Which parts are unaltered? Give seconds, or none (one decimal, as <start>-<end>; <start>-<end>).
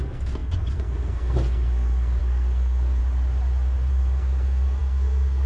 3.0-3.9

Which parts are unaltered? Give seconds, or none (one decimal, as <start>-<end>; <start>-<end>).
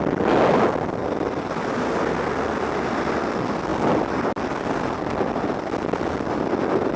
0.0-7.0